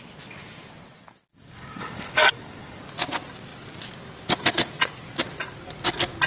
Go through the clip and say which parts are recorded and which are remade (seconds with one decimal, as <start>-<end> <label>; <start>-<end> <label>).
0.0-1.3 recorded; 1.3-2.8 remade; 2.8-6.3 recorded